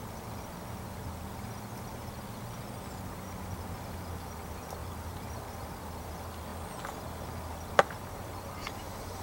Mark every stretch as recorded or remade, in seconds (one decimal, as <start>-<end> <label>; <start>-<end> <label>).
0.0-4.8 recorded; 4.8-5.9 remade; 5.9-9.2 recorded